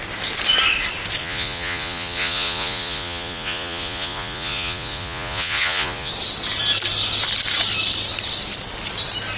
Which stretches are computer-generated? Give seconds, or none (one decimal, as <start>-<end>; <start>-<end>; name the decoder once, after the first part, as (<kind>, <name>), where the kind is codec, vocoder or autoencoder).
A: 1.2-6.1 (vocoder, Vocos)